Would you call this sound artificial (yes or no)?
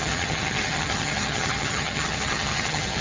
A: yes